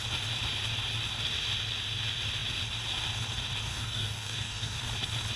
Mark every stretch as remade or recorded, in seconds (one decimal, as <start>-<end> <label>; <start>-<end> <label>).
0.0-3.7 recorded; 3.7-4.8 remade; 4.8-5.4 recorded